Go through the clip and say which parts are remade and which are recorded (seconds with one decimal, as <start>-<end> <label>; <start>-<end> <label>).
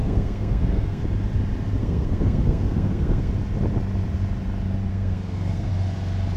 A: 0.0-1.0 remade; 1.0-1.8 recorded; 1.8-3.3 remade; 3.3-4.9 recorded; 4.9-5.7 remade; 5.7-6.4 recorded